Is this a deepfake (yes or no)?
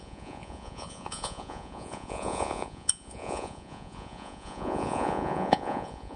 yes